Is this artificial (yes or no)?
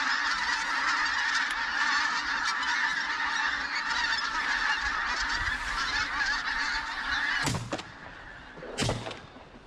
no